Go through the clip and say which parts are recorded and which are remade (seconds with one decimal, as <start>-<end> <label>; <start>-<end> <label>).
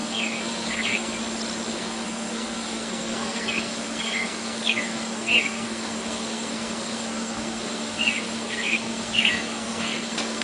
0.0-1.2 remade; 1.2-1.7 recorded; 1.7-10.4 remade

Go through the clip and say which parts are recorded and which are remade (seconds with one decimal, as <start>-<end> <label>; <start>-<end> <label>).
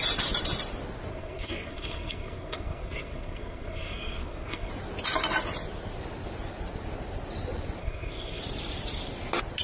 0.0-1.1 recorded; 1.1-4.7 remade; 4.7-7.8 recorded; 7.8-8.4 remade; 8.4-9.6 recorded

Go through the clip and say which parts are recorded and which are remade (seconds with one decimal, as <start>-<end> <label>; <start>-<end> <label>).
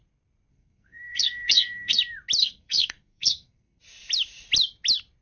0.0-0.5 recorded; 0.5-2.0 remade; 2.0-2.4 recorded; 2.4-3.8 remade; 3.8-5.2 recorded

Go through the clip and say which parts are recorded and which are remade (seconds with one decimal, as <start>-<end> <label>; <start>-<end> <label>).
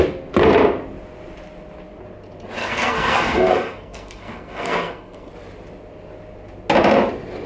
0.0-2.6 recorded; 2.6-5.3 remade; 5.3-7.5 recorded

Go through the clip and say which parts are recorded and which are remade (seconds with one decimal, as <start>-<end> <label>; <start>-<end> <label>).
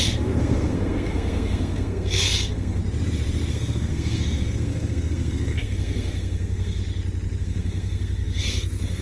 0.0-2.8 remade; 2.8-3.5 recorded; 3.5-6.8 remade; 6.8-7.4 recorded; 7.4-9.0 remade